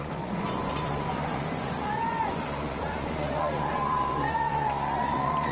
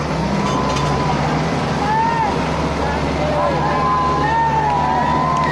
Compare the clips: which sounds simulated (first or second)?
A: first